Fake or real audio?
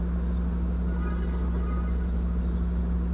real